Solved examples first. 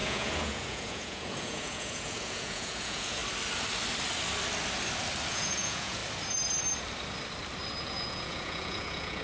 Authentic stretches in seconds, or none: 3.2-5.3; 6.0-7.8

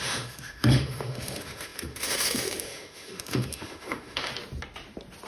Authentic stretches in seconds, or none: 4.3-5.3

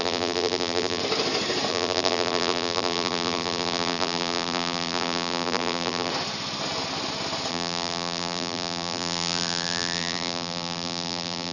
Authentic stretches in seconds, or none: 1.0-1.7; 6.1-7.5

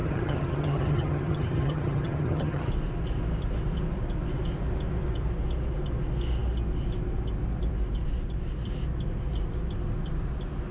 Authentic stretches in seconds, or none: 2.7-10.7